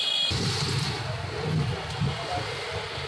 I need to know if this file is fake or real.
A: real